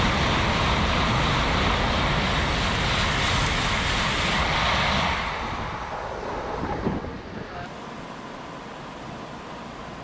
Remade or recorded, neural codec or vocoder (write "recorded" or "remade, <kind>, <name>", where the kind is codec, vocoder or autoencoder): recorded